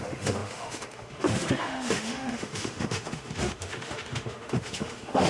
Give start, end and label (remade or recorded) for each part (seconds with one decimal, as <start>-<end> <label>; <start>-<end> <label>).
0.0-5.3 remade